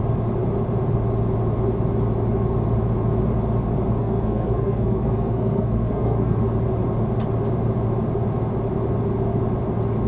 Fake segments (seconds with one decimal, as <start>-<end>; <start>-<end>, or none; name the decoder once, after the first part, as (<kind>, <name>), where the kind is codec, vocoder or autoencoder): 4.0-6.4 (codec, SNAC)